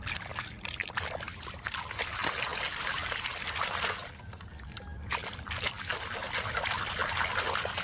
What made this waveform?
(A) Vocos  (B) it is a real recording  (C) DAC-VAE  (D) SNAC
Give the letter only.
B